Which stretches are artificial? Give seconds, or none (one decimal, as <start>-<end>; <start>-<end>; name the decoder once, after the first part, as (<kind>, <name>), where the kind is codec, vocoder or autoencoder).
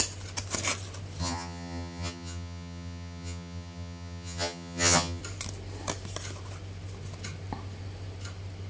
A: 1.2-5.2 (vocoder, HiFi-GAN)